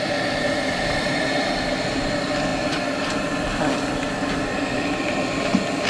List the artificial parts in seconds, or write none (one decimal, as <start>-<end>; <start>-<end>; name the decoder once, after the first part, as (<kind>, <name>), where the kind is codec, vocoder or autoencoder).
none